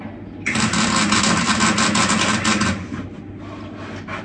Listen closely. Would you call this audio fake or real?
real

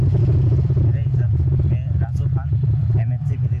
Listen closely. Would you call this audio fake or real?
real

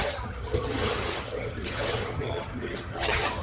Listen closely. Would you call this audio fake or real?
fake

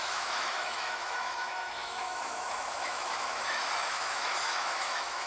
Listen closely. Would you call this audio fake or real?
fake